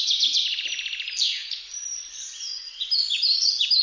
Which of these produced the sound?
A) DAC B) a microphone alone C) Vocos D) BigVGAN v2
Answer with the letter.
D